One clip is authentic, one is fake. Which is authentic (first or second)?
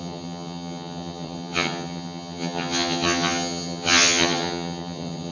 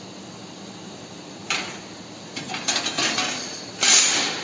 second